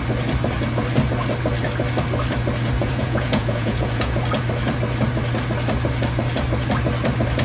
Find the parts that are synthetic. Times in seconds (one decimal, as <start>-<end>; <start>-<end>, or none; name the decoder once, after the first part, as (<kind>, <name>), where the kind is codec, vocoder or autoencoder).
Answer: 2.8-4.2 (vocoder, Vocos)